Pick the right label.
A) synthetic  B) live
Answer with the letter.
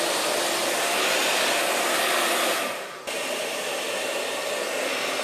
B